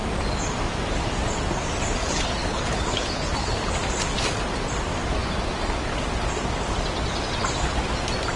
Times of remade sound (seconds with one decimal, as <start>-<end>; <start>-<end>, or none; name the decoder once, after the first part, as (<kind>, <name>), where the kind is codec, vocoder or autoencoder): 2.0-3.7 (codec, HILCodec)